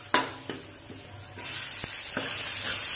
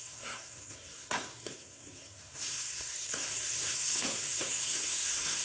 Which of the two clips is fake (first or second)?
second